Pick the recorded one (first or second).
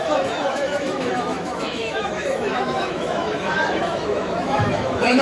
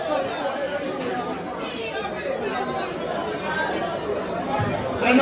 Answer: second